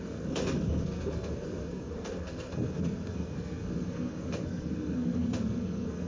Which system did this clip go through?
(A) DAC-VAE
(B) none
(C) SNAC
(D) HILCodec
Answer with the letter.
C